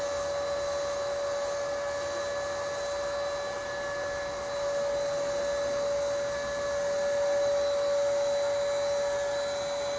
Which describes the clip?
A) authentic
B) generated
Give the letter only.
A